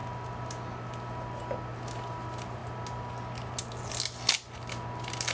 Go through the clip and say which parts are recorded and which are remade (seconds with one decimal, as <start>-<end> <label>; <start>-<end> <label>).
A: 0.0-5.3 recorded